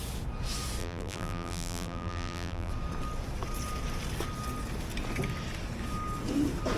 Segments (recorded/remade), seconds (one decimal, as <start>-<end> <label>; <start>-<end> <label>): 0.0-0.8 recorded; 0.8-2.7 remade; 2.7-6.8 recorded